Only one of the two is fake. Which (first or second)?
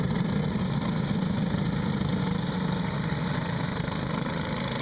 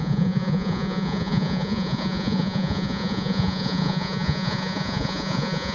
second